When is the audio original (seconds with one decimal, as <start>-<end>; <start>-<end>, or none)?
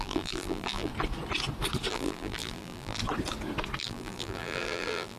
0.9-1.9; 3.0-3.8